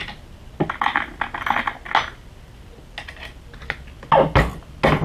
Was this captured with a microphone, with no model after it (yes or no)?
yes